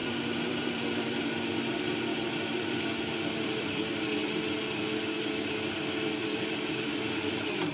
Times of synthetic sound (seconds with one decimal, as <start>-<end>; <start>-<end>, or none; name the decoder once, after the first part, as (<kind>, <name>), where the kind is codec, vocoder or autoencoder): 0.0-1.2 (vocoder, BigVGAN v2); 2.1-3.9; 6.3-7.3